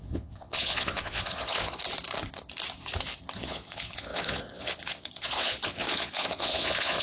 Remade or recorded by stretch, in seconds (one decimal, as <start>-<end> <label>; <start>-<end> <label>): 0.0-1.8 remade; 1.8-3.4 recorded; 3.4-7.0 remade